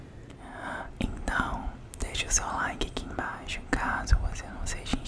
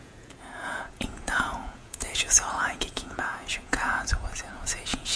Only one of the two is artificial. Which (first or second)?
second